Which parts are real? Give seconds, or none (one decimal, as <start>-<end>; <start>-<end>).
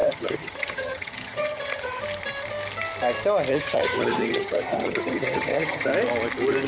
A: 2.0-3.5; 5.9-6.7